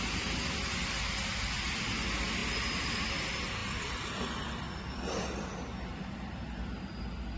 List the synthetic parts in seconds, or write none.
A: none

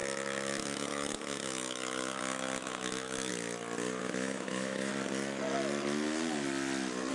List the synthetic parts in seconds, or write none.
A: 0.0-3.3 (autoencoder, DAC-VAE); 4.0-4.9

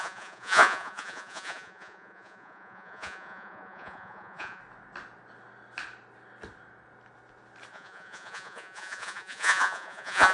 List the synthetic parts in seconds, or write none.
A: 0.0-4.6 (vocoder, Vocos); 7.7-10.3

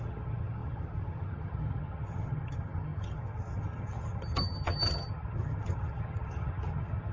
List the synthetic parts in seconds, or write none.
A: 0.0-7.1 (vocoder, HiFi-GAN)

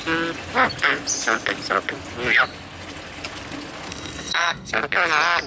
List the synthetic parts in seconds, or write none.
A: 3.9-4.7 (codec, SNAC)